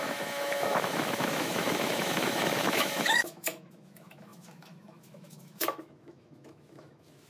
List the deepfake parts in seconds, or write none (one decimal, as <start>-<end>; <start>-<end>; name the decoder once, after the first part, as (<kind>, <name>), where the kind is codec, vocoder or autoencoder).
0.0-7.3 (autoencoder, DAC-VAE)